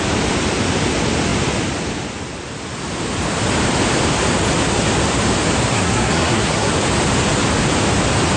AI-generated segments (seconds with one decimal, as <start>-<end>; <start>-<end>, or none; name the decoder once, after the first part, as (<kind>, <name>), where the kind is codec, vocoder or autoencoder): 5.7-6.7 (codec, SNAC)